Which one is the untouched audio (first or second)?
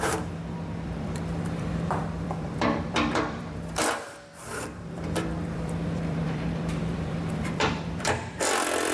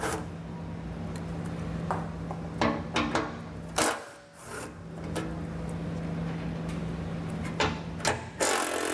second